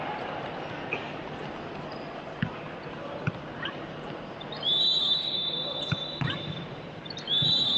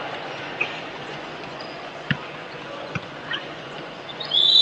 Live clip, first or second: first